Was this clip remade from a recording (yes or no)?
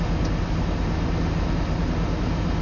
no